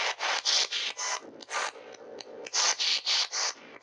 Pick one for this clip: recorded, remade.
recorded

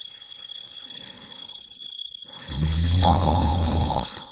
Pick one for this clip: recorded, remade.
remade